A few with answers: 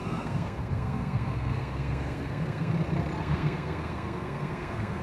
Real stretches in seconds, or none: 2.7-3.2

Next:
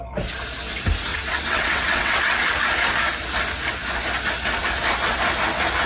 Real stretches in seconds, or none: 0.0-1.1; 2.2-5.9